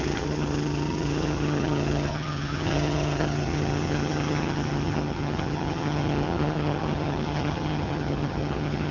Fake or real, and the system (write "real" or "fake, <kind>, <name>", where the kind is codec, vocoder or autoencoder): fake, vocoder, HiFi-GAN